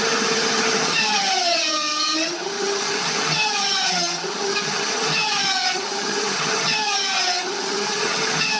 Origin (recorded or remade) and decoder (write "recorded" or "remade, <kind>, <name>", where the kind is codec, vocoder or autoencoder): remade, vocoder, HiFi-GAN